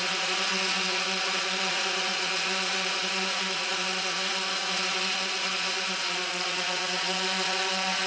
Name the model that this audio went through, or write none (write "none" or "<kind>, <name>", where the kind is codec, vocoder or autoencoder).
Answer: vocoder, Vocos